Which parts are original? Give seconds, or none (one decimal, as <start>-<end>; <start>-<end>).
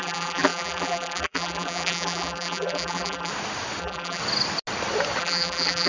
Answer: 3.3-3.8; 4.2-5.2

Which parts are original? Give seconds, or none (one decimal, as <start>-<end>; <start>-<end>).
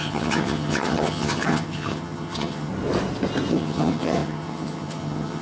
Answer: 2.7-3.5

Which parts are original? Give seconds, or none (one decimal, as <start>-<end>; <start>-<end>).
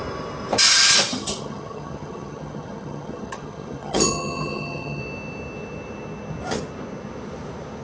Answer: 0.0-1.1; 5.0-7.8